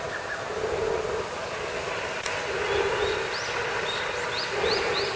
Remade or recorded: recorded